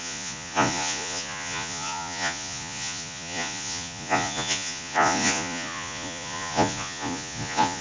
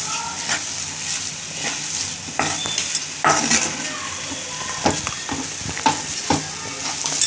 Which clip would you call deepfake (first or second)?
first